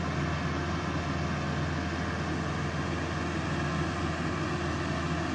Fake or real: real